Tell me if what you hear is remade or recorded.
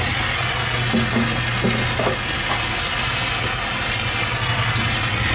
recorded